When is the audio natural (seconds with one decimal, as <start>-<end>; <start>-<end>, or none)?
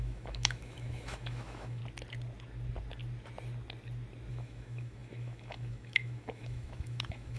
1.8-4.3